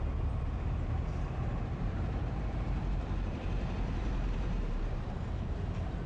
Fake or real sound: fake